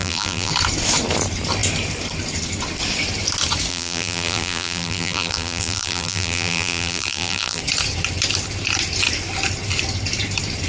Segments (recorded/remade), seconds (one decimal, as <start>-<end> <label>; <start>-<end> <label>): 0.0-0.5 remade; 0.5-3.7 recorded; 3.7-7.6 remade; 7.6-10.7 recorded